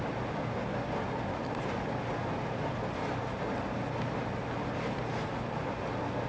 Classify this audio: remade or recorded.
recorded